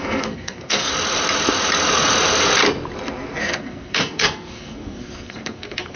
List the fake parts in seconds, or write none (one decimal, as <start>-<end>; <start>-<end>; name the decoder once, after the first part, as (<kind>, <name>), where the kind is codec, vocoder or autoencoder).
0.0-0.9 (codec, SNAC); 3.4-6.0